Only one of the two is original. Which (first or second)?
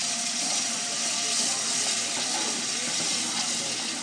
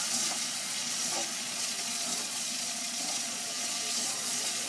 first